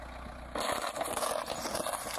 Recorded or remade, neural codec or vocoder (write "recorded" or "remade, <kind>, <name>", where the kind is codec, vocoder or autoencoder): recorded